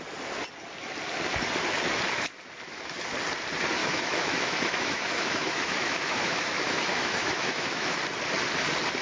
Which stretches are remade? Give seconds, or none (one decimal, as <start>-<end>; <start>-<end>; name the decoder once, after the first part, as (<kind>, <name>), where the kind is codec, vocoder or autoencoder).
3.8-8.0 (autoencoder, DAC-VAE)